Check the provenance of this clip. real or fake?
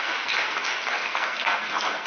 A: fake